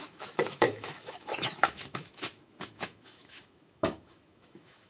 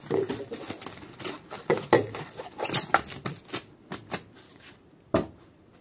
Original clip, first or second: second